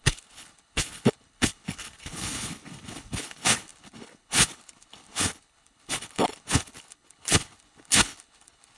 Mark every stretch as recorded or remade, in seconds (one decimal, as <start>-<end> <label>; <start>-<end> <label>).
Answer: 0.0-8.8 remade